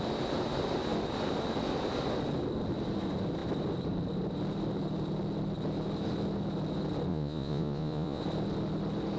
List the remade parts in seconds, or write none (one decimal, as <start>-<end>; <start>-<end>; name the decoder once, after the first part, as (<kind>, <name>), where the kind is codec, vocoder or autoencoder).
7.1-8.2 (vocoder, Vocos)